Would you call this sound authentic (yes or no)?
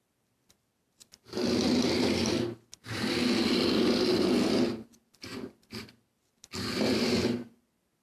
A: no